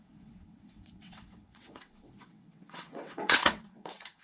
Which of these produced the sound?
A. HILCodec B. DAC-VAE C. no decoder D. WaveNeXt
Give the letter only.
D